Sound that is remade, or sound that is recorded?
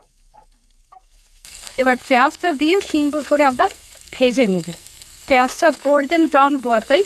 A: remade